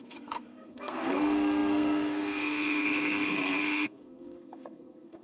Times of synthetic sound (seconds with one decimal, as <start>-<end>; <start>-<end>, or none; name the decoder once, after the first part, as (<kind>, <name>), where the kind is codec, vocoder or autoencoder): 0.0-5.2 (codec, SNAC)

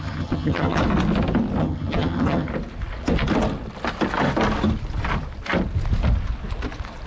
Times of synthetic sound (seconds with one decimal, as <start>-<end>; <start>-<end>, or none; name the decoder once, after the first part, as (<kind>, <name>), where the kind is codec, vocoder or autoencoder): 0.0-0.8 (vocoder, HiFi-GAN); 1.6-2.5

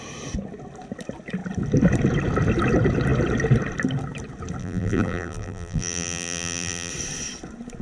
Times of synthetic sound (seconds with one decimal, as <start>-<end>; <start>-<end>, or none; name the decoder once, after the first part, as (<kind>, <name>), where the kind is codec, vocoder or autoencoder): 4.6-6.9 (vocoder, BigVGAN v2)

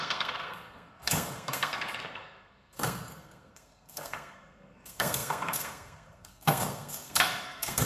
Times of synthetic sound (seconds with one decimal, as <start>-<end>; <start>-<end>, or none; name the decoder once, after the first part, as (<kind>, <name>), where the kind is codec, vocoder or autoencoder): 0.0-7.9 (codec, SNAC)

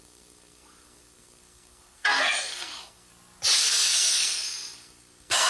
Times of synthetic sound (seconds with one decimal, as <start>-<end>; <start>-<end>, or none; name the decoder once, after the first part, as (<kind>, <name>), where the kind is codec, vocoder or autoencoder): 0.0-3.1 (codec, SNAC); 3.6-5.5

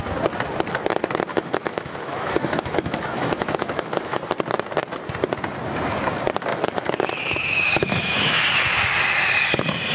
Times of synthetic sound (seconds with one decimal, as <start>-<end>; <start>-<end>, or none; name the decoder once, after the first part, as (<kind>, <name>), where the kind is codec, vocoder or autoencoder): 1.3-4.2 (autoencoder, DAC-VAE); 6.5-8.3